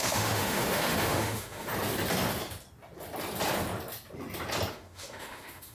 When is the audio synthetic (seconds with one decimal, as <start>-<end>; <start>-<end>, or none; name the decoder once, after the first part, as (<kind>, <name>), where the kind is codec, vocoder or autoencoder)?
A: 0.0-1.7 (autoencoder, DAC-VAE); 4.7-5.7